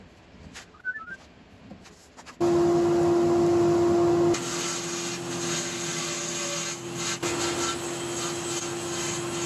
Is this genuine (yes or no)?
yes